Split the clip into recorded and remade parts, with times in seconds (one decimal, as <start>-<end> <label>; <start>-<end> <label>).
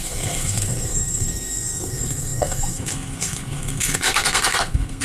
0.0-5.0 remade